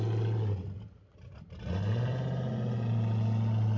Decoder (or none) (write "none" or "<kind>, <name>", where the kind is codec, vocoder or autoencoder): none